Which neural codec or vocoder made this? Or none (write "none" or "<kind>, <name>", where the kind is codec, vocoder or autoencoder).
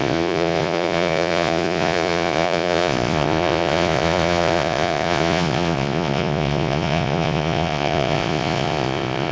vocoder, Vocos